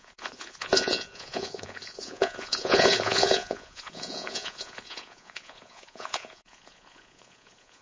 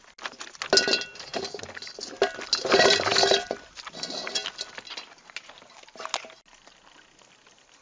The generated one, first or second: first